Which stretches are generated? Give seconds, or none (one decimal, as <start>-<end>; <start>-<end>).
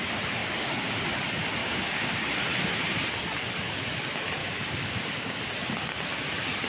0.4-1.0; 1.6-2.2; 4.4-5.5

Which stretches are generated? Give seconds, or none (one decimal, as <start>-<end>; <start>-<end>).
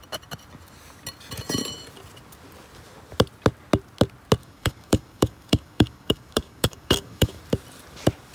4.4-7.4